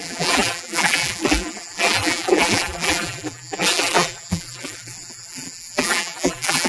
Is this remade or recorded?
remade